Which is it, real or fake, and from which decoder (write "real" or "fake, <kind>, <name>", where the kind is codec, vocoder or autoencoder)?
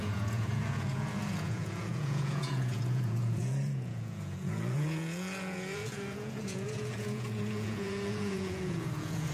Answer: fake, vocoder, Vocos